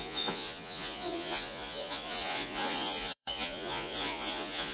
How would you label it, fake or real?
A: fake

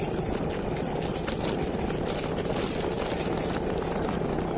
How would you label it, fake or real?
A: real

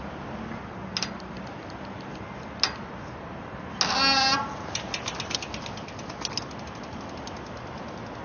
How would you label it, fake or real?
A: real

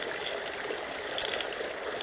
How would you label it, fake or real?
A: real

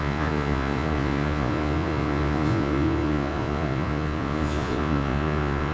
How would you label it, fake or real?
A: fake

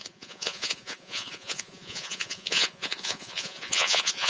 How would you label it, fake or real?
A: fake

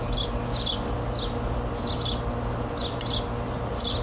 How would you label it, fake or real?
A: real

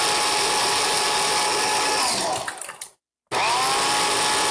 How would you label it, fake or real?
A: real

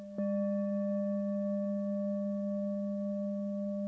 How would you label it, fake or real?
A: real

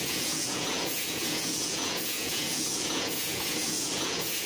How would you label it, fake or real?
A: fake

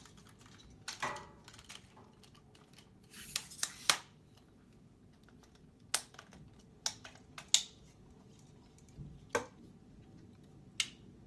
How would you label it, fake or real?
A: real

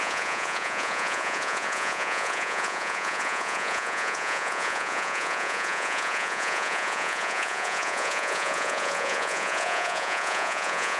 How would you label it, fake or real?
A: fake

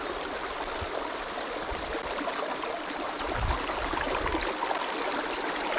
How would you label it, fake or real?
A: real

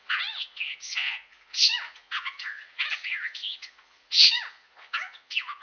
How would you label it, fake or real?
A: fake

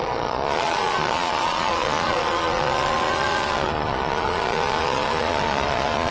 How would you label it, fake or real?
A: fake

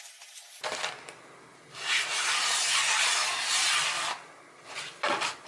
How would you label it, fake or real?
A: real